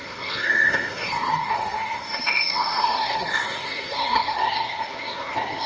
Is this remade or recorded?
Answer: remade